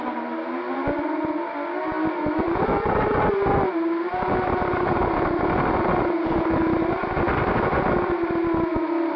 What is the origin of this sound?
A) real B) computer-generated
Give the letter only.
A